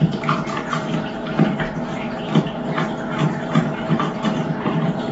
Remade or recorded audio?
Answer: recorded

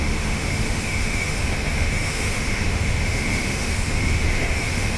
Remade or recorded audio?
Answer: remade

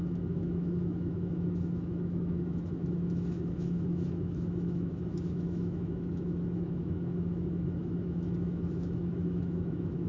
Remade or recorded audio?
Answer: remade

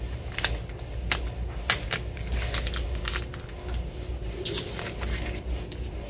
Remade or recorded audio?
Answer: recorded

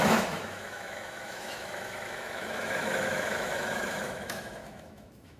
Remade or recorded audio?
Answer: remade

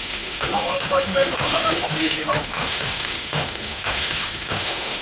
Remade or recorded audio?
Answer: remade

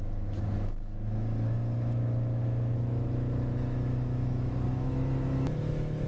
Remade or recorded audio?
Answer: remade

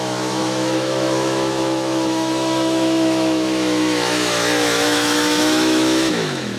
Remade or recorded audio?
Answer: remade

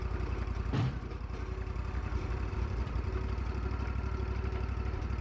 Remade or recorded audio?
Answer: recorded